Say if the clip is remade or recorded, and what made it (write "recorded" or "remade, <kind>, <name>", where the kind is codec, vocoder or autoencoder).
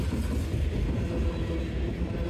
recorded